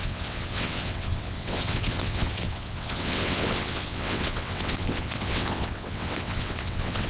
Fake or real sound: fake